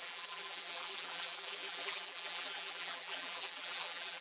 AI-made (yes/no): yes